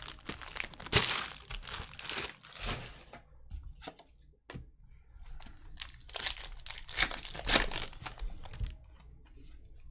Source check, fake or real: real